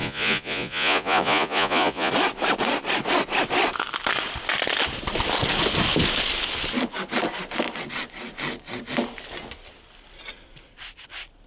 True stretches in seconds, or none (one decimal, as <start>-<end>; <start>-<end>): 2.1-11.5

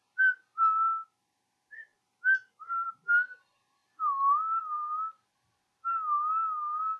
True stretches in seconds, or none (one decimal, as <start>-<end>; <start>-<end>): 0.0-7.0

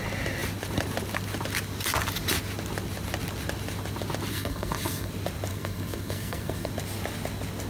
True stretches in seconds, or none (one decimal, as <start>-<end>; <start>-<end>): 0.0-4.3; 5.1-5.5; 6.7-7.7

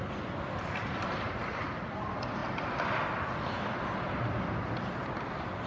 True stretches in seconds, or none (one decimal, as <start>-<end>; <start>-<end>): 0.0-5.7

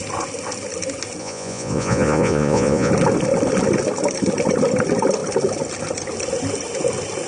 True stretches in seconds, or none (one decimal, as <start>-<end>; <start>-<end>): 0.0-1.2; 2.9-7.3

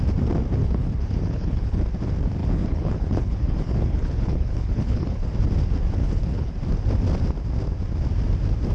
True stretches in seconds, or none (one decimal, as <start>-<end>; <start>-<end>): 0.0-0.6; 1.8-2.4; 5.3-6.0; 6.5-8.7

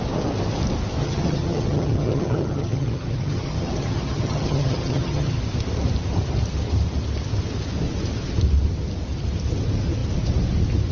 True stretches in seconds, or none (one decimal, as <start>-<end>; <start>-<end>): 0.0-1.0; 5.4-10.9

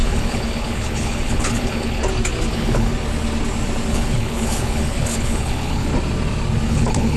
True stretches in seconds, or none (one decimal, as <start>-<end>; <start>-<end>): 2.0-2.5; 2.9-3.9; 5.9-6.7